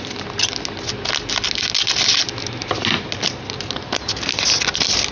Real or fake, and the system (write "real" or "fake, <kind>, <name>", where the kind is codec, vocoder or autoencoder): real